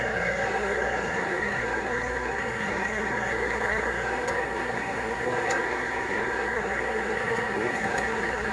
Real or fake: fake